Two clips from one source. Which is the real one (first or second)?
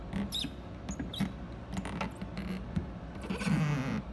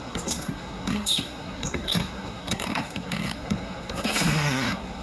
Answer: first